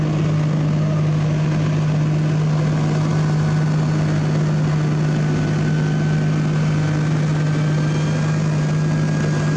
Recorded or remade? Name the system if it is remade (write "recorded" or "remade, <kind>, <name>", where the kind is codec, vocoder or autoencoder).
recorded